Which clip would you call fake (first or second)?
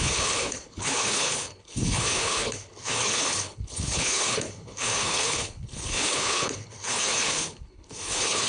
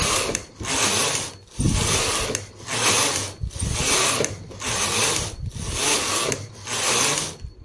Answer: first